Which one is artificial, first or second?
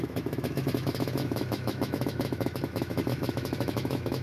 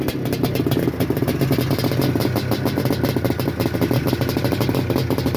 first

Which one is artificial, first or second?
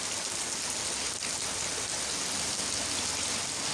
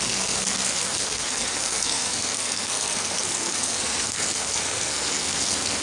second